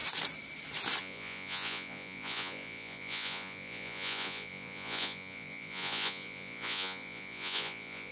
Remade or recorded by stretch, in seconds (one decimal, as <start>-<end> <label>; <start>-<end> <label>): 0.0-1.0 recorded; 1.0-8.1 remade